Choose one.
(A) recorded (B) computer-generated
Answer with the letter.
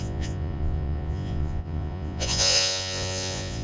B